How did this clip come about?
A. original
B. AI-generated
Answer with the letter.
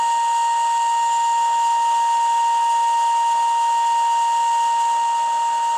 A